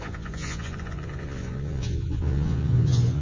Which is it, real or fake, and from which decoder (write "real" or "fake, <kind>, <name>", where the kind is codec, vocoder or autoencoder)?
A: fake, vocoder, Vocos